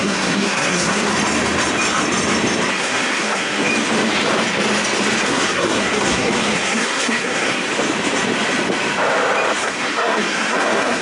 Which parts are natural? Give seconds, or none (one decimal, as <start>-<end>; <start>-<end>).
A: 1.1-2.7; 3.7-5.2; 7.7-9.6